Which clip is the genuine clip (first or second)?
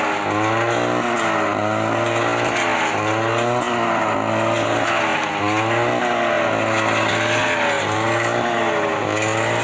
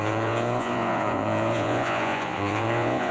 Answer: first